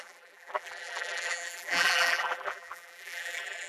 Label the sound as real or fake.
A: fake